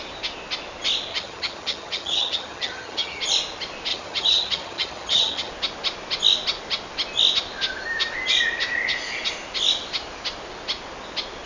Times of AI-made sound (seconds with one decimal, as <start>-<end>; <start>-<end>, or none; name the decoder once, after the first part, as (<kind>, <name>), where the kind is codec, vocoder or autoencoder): 1.1-3.2 (vocoder, HiFi-GAN); 3.9-5.5